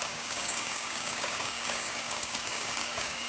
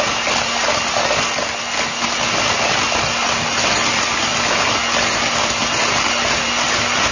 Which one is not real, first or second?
first